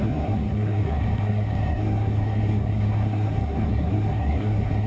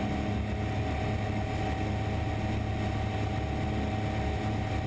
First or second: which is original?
second